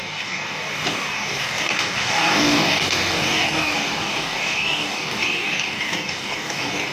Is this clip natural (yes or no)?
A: no